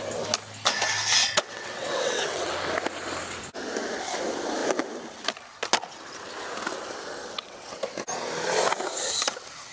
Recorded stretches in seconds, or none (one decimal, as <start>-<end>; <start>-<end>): 0.0-1.2; 2.5-7.2; 7.8-9.7